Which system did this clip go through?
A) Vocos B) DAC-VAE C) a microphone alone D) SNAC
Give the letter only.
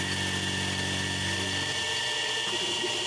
C